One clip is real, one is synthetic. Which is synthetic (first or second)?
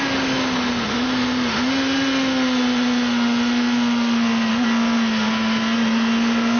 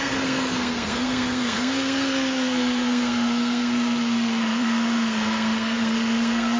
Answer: second